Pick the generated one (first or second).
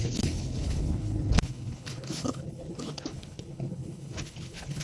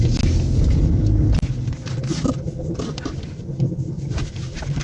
first